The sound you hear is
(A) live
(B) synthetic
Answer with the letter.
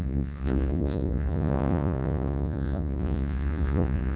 B